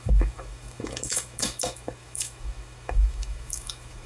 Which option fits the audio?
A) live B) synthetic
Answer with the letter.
B